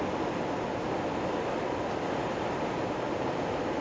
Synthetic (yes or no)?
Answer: no